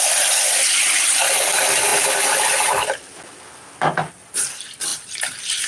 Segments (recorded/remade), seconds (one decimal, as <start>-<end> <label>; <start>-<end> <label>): 0.0-1.9 remade; 1.9-4.1 recorded; 4.1-4.9 remade; 4.9-5.7 recorded